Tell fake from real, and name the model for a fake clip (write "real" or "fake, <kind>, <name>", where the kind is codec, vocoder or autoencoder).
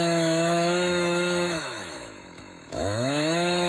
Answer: fake, autoencoder, DAC-VAE